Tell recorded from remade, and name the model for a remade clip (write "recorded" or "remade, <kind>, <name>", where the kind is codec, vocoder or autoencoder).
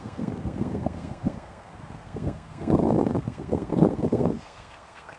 remade, codec, SNAC